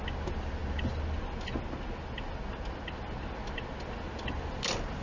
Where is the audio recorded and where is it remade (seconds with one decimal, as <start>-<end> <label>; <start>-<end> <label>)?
0.0-5.0 recorded